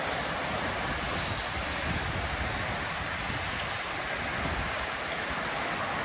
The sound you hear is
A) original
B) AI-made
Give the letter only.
A